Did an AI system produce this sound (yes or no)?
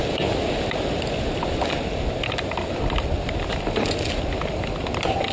no